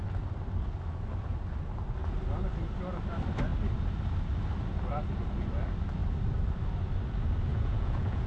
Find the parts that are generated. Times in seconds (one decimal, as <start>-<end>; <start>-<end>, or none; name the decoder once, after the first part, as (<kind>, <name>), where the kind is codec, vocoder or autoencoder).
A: 7.5-8.3 (vocoder, Vocos)